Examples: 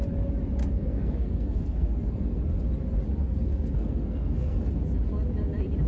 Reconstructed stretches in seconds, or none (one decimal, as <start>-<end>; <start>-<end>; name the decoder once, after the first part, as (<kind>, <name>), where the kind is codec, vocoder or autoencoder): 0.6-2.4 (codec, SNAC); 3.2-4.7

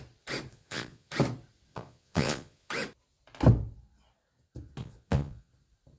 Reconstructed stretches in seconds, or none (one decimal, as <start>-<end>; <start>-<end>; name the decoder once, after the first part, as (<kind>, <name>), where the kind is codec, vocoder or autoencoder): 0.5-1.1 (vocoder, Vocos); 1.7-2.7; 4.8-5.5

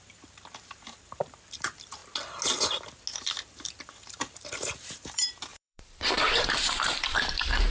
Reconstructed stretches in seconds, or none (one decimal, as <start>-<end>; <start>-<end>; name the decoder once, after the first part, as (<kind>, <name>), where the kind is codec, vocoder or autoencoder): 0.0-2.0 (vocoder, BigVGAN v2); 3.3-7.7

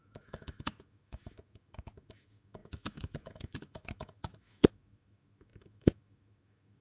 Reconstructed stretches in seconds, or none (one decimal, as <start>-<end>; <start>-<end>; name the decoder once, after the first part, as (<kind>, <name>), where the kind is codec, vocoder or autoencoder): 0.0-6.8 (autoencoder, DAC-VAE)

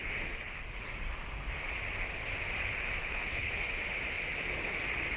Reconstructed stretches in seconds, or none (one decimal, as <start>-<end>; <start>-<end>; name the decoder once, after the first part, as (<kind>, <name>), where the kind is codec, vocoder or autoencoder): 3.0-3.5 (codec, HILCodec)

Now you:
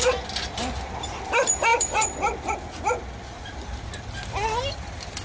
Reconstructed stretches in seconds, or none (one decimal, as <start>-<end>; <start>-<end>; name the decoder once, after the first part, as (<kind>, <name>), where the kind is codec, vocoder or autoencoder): 1.7-2.5 (vocoder, BigVGAN v2)